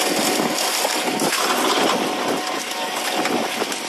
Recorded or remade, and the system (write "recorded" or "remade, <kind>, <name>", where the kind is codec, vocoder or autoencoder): recorded